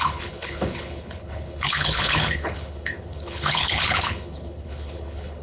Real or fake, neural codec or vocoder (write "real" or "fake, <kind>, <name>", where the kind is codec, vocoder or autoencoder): fake, codec, HILCodec